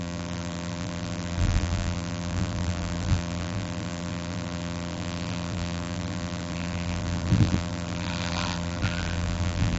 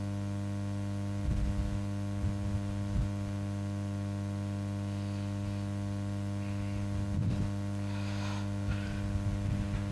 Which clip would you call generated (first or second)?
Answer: first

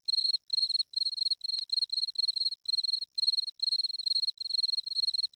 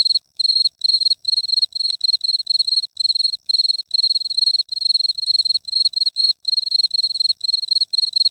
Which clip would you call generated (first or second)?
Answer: second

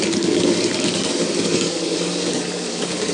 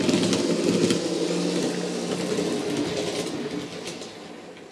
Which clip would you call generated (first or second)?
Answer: first